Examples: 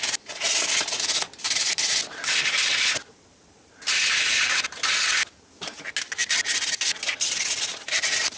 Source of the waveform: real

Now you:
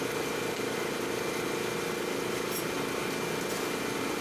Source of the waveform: real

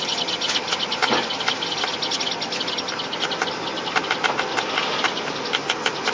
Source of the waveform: real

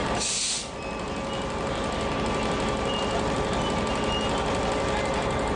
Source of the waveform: real